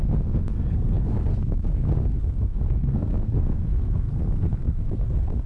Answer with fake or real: fake